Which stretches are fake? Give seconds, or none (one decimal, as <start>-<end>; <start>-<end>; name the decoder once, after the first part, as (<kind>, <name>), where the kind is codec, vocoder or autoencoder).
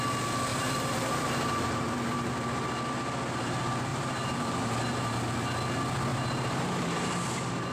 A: 0.5-2.3 (vocoder, BigVGAN v2); 3.9-5.1; 6.1-7.3